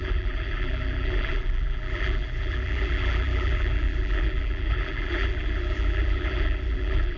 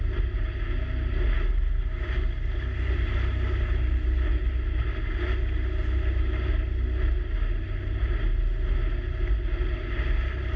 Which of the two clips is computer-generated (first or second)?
first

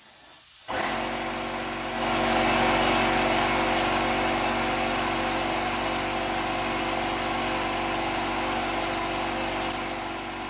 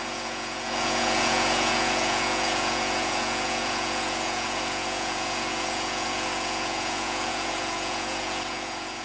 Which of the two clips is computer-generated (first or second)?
second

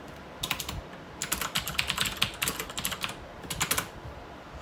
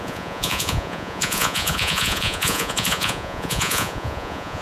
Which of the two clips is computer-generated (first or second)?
second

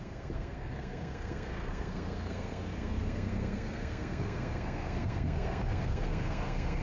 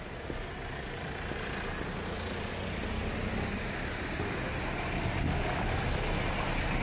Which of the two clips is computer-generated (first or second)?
first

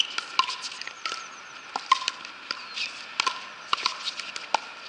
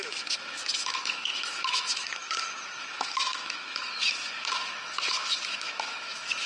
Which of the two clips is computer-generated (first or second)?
second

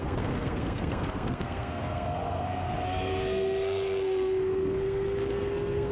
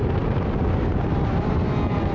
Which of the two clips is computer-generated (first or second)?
first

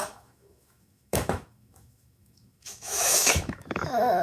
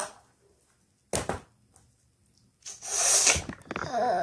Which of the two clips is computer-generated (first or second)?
first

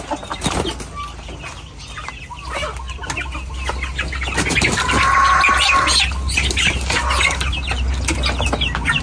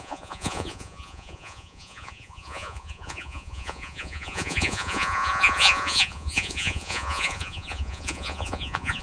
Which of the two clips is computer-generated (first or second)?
second